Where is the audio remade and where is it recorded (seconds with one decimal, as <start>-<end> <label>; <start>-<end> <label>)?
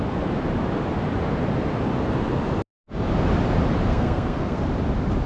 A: 0.0-3.9 recorded; 3.9-4.6 remade; 4.6-5.3 recorded